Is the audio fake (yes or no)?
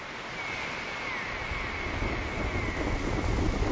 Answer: no